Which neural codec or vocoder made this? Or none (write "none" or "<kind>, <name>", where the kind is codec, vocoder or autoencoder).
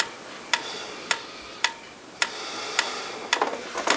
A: none